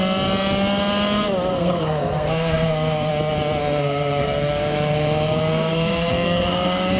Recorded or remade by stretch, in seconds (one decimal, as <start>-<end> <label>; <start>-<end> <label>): 0.0-1.5 recorded; 1.5-3.1 remade; 3.1-3.6 recorded; 3.6-7.0 remade